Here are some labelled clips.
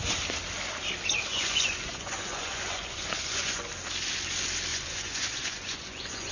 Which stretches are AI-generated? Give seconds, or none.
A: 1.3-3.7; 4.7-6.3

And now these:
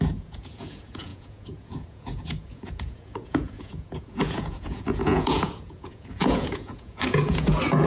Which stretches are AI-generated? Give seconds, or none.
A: 0.0-7.9